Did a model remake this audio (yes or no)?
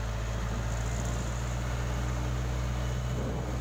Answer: no